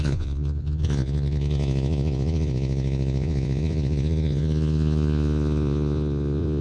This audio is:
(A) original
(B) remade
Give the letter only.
B